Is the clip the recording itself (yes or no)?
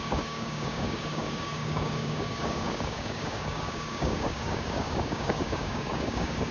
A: no